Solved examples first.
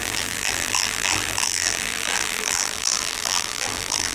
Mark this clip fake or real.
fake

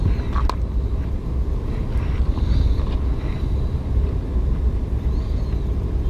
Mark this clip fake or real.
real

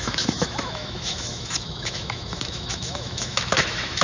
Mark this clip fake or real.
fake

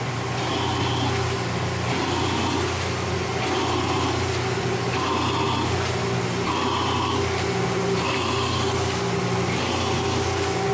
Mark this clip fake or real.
real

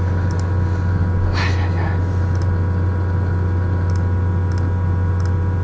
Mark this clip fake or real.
real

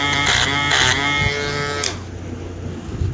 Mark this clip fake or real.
real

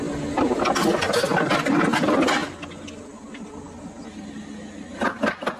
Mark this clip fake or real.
real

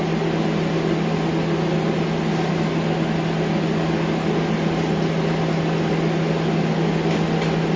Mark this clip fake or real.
real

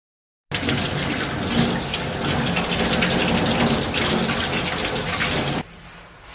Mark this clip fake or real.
real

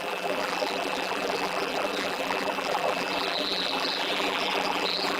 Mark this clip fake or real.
fake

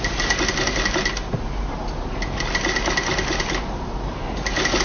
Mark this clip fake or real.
real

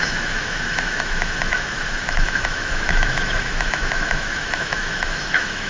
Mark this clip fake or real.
fake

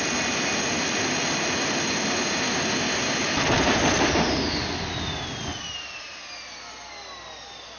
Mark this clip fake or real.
real